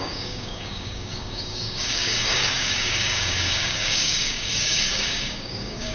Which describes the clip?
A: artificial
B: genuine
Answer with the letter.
A